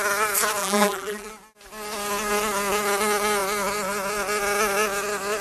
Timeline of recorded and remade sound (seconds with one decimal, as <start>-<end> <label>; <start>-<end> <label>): 0.0-0.6 recorded; 0.6-1.3 remade; 1.3-5.4 recorded